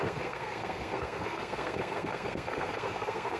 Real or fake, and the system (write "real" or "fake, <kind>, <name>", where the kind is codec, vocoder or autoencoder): fake, codec, SNAC